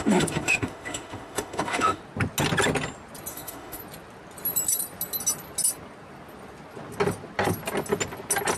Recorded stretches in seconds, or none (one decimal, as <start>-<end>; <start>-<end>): 2.0-3.3; 3.8-8.6

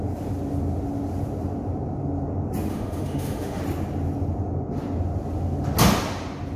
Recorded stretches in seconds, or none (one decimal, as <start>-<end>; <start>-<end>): 0.0-2.7; 3.6-6.6

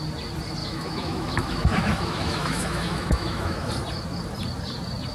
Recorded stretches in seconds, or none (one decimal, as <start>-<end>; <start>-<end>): 0.0-0.6; 3.7-5.1